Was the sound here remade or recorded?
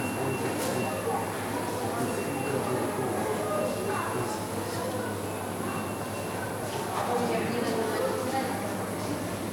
recorded